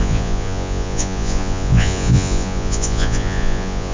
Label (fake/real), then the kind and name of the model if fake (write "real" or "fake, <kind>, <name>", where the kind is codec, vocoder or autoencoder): fake, vocoder, Vocos